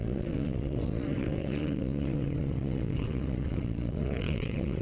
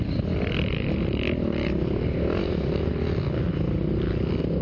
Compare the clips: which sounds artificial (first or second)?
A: first